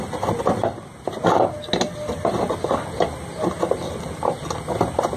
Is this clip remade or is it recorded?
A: recorded